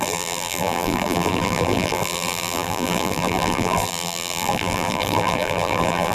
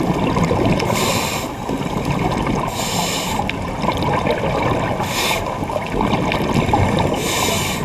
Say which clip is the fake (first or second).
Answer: first